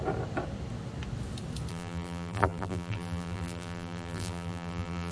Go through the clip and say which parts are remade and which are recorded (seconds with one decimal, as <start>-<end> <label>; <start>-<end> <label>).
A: 0.0-1.7 recorded; 1.7-5.1 remade